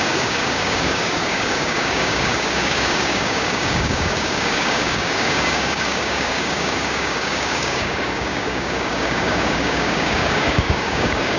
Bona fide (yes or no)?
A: no